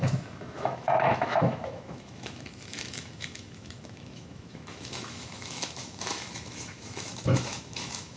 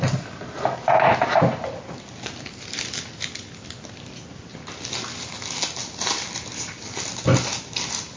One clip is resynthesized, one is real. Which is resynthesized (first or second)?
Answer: first